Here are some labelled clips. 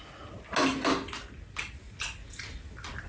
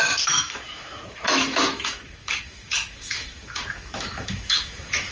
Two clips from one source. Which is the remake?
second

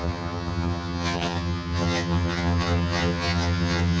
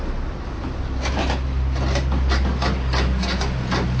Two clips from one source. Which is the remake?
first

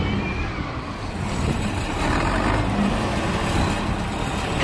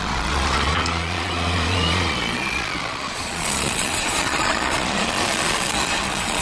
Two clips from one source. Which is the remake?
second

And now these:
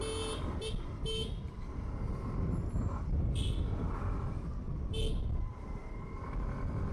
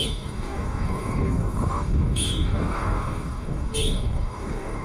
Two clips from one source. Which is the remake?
second